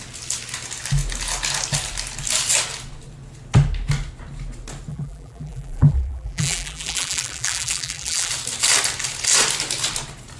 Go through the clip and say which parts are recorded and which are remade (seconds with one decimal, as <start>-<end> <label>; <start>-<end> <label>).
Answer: 0.0-4.9 recorded; 4.9-8.3 remade; 8.3-10.4 recorded